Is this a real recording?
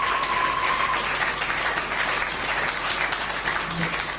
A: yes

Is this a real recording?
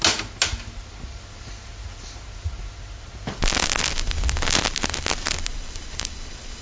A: yes